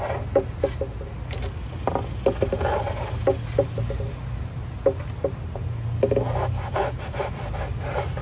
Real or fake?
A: real